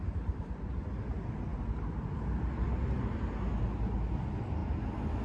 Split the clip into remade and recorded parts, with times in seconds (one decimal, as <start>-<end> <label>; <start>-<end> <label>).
0.0-5.2 recorded